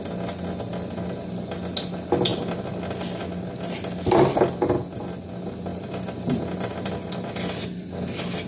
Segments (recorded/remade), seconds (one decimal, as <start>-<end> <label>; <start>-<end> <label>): 0.0-2.3 recorded; 2.3-3.0 remade; 3.0-5.7 recorded; 5.7-7.9 remade; 7.9-8.5 recorded

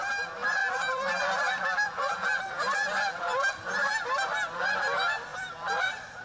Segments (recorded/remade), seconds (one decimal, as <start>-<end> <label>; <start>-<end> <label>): 0.0-0.6 recorded; 0.6-2.1 remade; 2.1-5.3 recorded; 5.3-6.2 remade

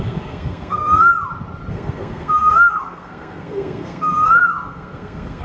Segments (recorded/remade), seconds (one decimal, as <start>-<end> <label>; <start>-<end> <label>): 0.0-1.1 remade; 1.1-1.7 recorded; 1.7-5.4 remade

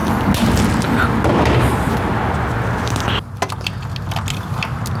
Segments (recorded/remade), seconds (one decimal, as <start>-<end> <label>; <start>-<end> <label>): 0.0-5.0 recorded

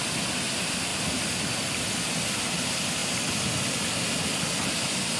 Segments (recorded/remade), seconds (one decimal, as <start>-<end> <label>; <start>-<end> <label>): 0.0-5.2 recorded

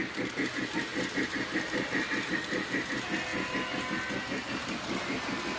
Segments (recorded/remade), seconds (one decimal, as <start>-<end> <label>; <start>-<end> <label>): 0.0-5.6 recorded